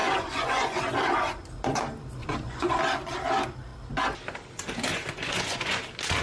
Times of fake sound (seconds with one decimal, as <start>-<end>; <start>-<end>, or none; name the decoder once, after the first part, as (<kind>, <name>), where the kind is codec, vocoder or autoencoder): 0.0-0.8 (vocoder, Vocos); 2.2-2.8; 4.9-5.8